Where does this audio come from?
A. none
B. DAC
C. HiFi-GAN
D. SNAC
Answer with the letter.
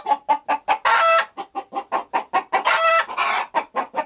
A